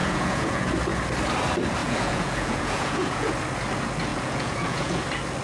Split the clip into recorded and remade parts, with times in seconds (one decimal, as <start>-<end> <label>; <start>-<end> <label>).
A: 0.0-0.7 remade; 0.7-1.8 recorded; 1.8-3.3 remade; 3.3-4.1 recorded; 4.1-5.0 remade; 5.0-5.4 recorded